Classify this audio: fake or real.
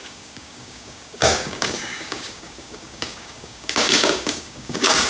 fake